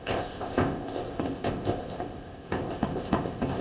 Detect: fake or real fake